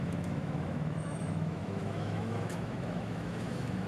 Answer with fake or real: fake